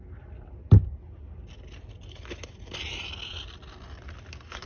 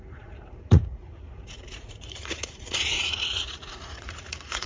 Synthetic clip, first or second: second